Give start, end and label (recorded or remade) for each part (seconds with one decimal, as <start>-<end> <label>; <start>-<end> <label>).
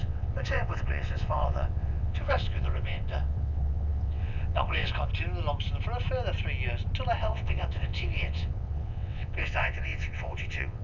0.0-5.1 remade; 5.1-7.2 recorded; 7.2-10.8 remade